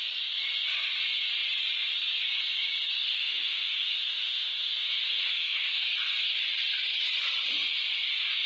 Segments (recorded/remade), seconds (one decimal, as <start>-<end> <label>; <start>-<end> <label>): 0.0-3.0 recorded; 3.0-5.9 remade; 5.9-8.5 recorded